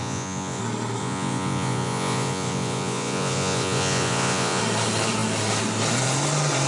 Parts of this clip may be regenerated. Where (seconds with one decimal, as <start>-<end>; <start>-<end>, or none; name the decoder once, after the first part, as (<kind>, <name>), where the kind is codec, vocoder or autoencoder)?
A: 0.0-0.6 (vocoder, Vocos); 1.0-4.6